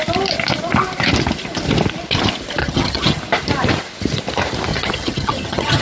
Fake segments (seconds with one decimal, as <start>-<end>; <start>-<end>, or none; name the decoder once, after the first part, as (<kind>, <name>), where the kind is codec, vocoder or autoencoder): 2.6-3.2 (vocoder, HiFi-GAN); 4.7-5.8

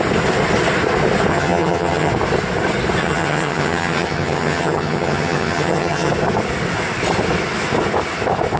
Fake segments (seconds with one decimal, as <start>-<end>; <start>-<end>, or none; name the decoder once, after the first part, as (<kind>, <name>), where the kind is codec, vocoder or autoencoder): 1.3-2.1 (vocoder, HiFi-GAN); 3.0-6.1

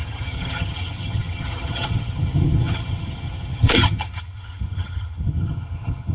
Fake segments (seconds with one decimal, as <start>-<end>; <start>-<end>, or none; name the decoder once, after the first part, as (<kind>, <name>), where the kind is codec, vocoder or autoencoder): 0.0-6.1 (vocoder, HiFi-GAN)

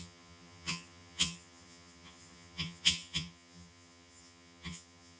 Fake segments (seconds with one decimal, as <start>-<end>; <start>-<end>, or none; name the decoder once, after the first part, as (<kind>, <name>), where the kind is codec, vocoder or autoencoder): 0.0-5.2 (vocoder, HiFi-GAN)

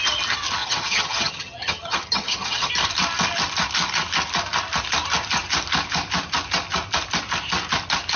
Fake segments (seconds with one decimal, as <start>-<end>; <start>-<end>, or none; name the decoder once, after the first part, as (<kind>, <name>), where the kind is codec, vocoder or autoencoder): 0.6-2.7 (vocoder, HiFi-GAN)

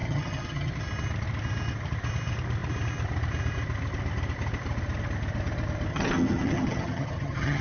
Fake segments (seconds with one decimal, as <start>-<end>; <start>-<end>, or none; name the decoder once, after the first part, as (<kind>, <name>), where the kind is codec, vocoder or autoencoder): 0.0-0.7 (vocoder, HiFi-GAN); 5.9-7.6

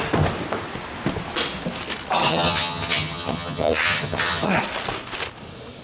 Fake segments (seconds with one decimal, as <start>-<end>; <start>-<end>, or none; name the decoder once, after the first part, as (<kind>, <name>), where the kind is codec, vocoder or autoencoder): 2.3-4.5 (vocoder, HiFi-GAN)